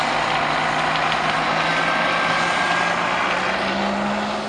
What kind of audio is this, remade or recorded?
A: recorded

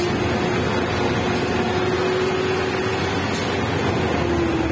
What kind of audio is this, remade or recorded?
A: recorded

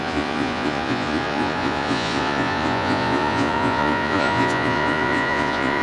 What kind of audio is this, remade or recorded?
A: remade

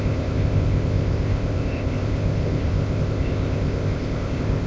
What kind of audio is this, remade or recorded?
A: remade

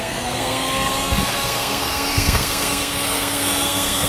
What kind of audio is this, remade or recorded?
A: remade